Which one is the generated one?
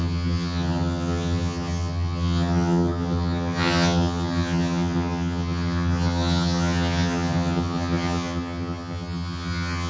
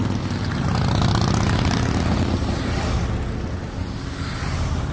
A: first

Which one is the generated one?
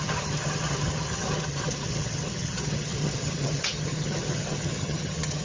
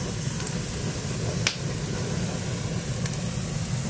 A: first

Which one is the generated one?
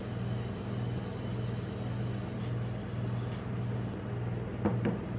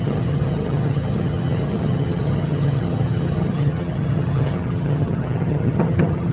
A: second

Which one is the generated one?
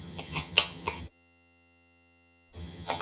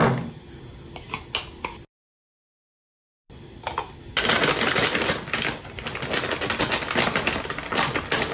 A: first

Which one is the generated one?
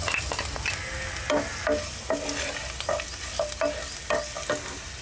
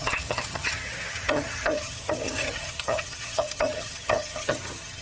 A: second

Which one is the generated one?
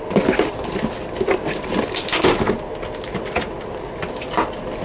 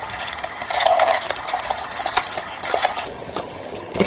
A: second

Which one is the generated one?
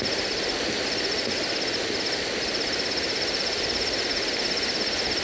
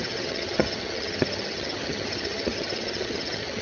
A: second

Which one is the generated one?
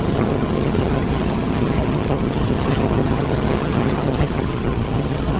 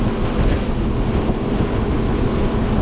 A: first